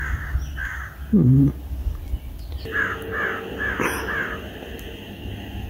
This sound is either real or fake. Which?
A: real